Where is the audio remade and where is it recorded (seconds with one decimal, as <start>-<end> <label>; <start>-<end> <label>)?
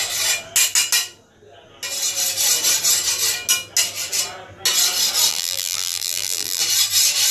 0.0-5.3 recorded; 5.3-6.6 remade; 6.6-7.3 recorded